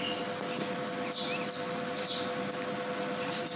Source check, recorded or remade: recorded